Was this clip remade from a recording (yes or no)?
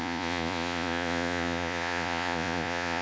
yes